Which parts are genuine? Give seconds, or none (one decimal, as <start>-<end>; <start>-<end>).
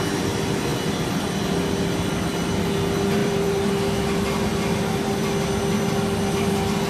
0.0-3.2; 3.7-6.9